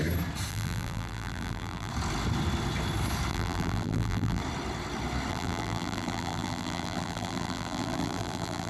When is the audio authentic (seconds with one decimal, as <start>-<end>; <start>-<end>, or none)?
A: 0.0-0.5; 1.9-3.3; 4.4-5.3

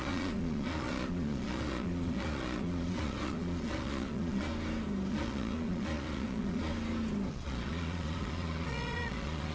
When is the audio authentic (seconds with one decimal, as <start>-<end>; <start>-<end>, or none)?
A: 4.5-5.1; 6.7-7.3

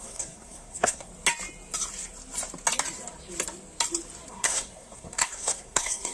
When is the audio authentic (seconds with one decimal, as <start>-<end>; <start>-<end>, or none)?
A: 1.1-4.3

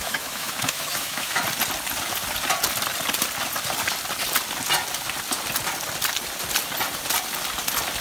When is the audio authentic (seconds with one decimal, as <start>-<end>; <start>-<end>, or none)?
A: 1.4-8.0